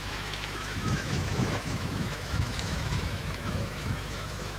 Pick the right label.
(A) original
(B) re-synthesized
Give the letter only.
B